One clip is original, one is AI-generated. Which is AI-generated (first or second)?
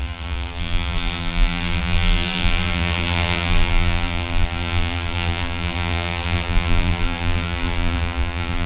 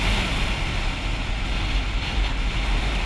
first